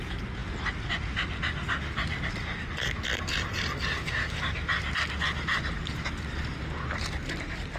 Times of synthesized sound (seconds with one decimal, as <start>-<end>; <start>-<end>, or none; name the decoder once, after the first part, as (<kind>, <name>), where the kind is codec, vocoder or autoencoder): none